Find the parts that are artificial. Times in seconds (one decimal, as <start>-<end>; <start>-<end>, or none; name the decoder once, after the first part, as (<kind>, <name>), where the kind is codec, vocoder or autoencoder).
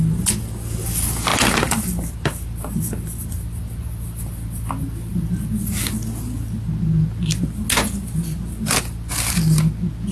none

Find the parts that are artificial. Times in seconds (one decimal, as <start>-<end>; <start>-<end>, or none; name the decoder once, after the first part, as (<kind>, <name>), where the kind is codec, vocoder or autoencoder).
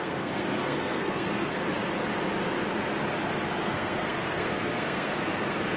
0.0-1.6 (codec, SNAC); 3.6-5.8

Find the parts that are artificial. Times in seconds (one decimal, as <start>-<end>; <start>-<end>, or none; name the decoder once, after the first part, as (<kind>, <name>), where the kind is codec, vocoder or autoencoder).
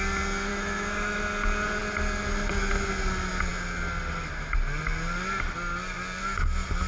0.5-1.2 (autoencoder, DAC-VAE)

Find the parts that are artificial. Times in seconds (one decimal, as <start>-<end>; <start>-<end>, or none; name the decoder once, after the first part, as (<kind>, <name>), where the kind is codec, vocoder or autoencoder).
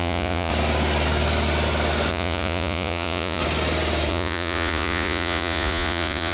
0.0-0.5 (vocoder, Vocos); 2.1-3.4; 4.1-6.3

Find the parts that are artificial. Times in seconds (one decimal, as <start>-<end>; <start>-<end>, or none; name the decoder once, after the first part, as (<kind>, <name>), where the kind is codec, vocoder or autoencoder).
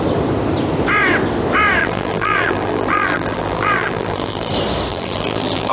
1.8-4.5 (vocoder, BigVGAN v2); 4.9-5.7